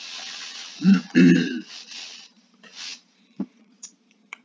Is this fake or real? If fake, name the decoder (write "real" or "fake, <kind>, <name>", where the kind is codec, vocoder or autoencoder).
fake, vocoder, Vocos